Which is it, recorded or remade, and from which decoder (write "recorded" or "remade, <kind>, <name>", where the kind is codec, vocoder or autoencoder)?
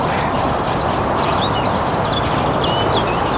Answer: recorded